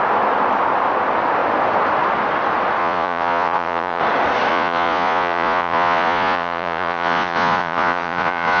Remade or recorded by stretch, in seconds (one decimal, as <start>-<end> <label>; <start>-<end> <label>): 0.0-2.8 recorded; 2.8-4.0 remade; 4.0-4.5 recorded; 4.5-8.6 remade